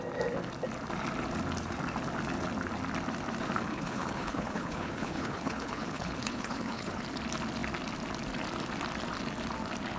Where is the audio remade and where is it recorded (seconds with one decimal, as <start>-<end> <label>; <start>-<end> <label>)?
0.0-3.7 recorded; 3.7-7.0 remade; 7.0-10.0 recorded